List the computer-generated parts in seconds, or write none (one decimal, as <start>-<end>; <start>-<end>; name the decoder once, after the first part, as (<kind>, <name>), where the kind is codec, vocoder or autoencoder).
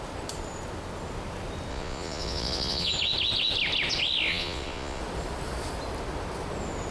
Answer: 1.7-2.9 (vocoder, Vocos); 4.3-5.0